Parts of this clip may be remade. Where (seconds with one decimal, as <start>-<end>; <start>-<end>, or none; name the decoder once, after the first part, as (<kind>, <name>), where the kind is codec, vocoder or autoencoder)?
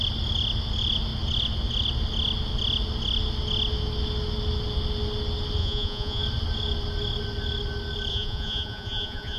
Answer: 5.6-6.2 (vocoder, Vocos); 8.1-9.4